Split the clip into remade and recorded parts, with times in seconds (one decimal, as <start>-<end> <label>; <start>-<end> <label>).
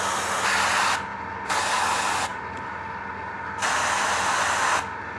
0.0-5.2 recorded